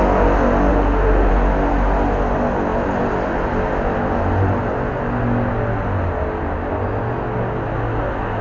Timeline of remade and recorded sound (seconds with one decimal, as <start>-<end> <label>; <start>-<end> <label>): 0.0-0.7 recorded; 0.7-1.3 remade; 1.3-8.4 recorded